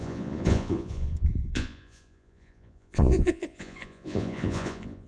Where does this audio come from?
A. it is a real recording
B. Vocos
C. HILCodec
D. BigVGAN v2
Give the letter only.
B